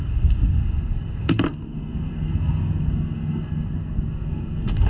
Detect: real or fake fake